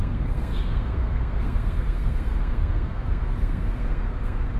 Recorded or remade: remade